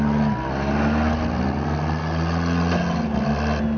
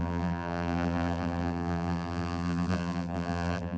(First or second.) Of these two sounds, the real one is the first